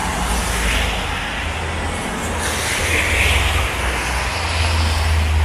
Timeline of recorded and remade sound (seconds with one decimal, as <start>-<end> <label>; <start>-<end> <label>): 0.0-5.4 recorded